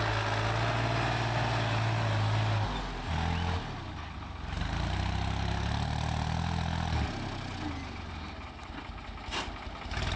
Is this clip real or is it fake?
real